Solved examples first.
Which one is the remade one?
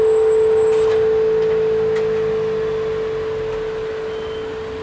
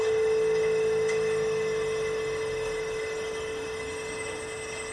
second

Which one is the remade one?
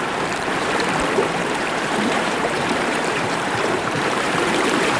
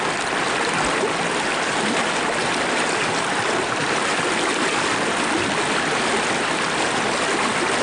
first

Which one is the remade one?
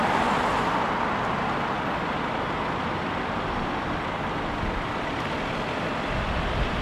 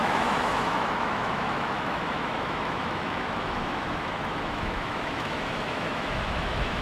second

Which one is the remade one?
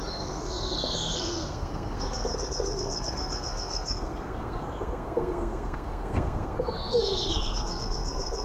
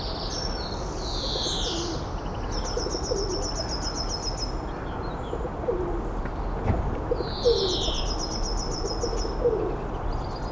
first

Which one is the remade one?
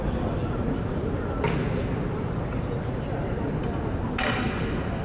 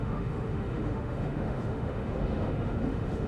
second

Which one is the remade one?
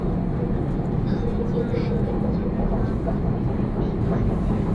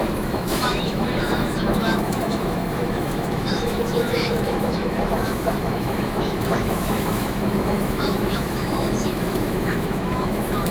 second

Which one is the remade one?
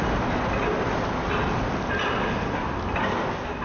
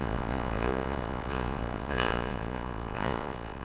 second